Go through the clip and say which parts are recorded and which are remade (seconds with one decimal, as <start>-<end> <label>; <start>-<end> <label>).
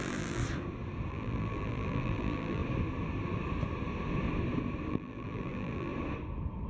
0.0-0.4 remade; 0.4-1.1 recorded; 1.1-2.6 remade; 2.6-4.9 recorded; 4.9-5.9 remade; 5.9-6.7 recorded